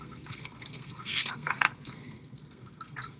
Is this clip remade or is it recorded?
remade